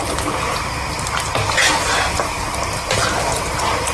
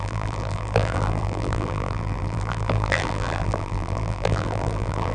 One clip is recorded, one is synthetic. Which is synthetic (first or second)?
second